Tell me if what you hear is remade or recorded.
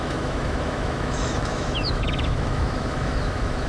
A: remade